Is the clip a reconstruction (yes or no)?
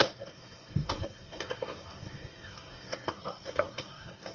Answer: yes